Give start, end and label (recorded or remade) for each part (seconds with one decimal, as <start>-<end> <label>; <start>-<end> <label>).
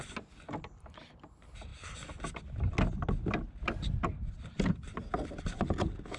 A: 0.0-6.2 recorded